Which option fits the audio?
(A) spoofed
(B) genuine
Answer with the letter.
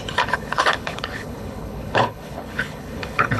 A